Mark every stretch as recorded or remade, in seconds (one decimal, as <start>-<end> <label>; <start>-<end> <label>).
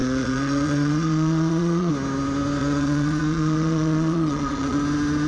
0.0-1.9 remade; 1.9-2.6 recorded; 2.6-4.8 remade; 4.8-5.3 recorded